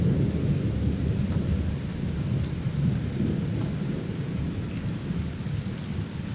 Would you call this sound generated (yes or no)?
no